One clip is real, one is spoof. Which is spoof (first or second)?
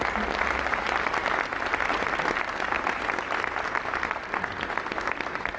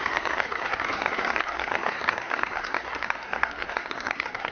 second